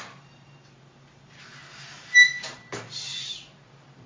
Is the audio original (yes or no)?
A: yes